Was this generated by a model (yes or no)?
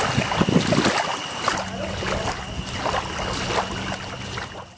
no